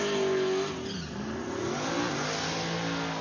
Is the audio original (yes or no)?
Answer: yes